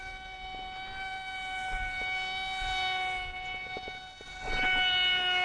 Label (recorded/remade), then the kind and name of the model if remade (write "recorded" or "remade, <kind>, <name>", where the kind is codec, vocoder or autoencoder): recorded